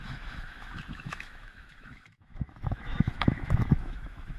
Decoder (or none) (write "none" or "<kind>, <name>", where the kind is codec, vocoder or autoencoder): autoencoder, DAC-VAE